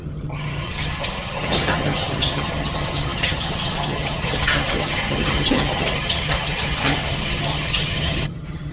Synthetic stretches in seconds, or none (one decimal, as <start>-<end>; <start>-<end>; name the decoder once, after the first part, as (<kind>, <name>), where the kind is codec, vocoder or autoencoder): 0.0-8.7 (vocoder, HiFi-GAN)